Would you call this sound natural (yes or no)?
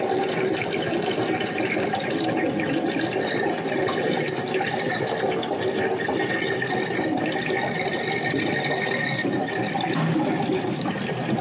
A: yes